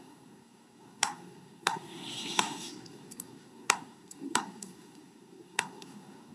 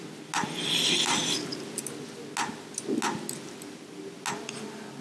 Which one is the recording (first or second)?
second